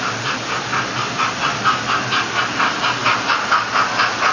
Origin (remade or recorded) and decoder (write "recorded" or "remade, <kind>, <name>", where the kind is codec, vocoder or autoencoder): recorded